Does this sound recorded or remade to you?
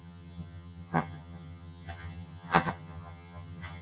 remade